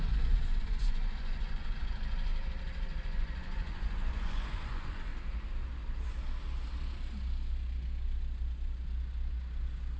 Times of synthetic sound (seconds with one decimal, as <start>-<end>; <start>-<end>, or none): 0.0-2.3; 3.0-5.1